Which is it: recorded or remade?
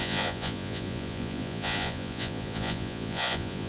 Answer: remade